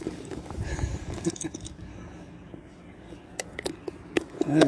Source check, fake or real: fake